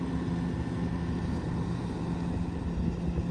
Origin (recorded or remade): recorded